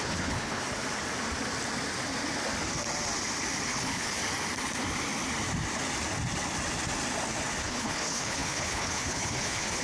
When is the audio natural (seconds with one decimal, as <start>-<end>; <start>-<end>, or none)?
0.6-3.7; 4.2-7.6